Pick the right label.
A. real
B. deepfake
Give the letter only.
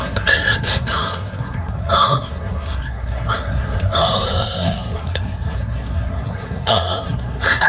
B